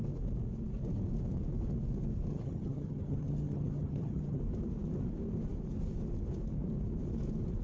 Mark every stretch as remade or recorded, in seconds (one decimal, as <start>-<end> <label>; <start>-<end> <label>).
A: 0.0-2.3 recorded; 2.3-4.4 remade; 4.4-7.6 recorded